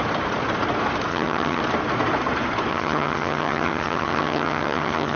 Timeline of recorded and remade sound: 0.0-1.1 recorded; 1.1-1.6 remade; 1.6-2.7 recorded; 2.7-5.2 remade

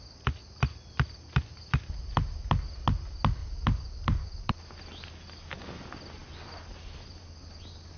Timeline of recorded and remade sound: 0.0-3.4 recorded; 3.4-4.6 remade; 4.6-8.0 recorded

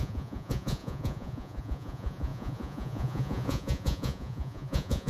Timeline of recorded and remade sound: 0.0-5.1 remade